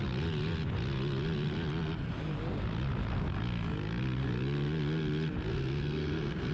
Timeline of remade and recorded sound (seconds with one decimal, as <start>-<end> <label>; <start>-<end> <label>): 0.0-5.5 recorded; 5.5-6.5 remade